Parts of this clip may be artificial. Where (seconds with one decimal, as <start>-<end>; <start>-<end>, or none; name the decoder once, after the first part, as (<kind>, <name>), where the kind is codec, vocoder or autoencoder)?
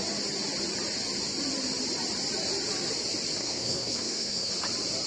3.4-4.5 (codec, SNAC)